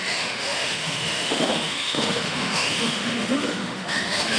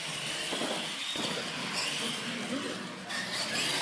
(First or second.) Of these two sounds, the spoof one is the first